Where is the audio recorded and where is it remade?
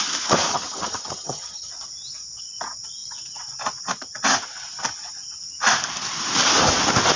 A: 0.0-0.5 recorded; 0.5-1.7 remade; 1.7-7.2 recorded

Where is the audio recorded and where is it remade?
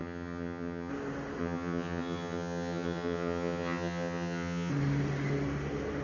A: 0.0-0.9 remade; 0.9-1.4 recorded; 1.4-4.7 remade; 4.7-6.0 recorded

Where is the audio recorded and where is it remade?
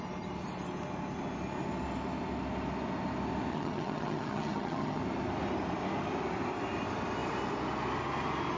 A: 0.0-3.5 recorded; 3.5-5.0 remade; 5.0-8.6 recorded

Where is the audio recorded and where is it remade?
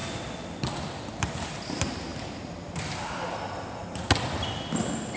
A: 0.0-5.2 recorded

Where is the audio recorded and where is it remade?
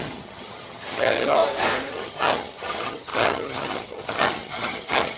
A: 0.0-1.4 remade; 1.4-1.9 recorded; 1.9-5.2 remade